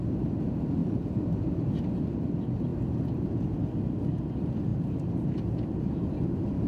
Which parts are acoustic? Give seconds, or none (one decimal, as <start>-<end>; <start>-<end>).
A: 0.0-0.8; 2.2-4.7; 6.1-6.7